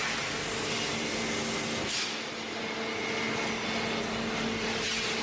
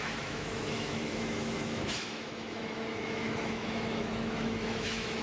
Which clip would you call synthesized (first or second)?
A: second